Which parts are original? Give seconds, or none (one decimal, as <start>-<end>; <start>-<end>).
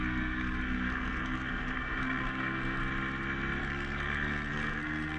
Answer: 2.8-3.6